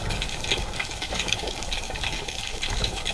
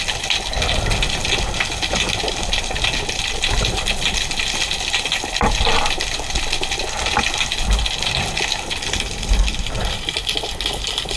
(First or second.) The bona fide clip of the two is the second